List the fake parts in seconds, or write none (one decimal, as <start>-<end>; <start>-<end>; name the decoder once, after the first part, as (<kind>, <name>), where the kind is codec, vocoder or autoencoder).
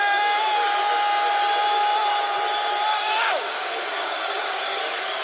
2.9-4.8 (codec, DAC)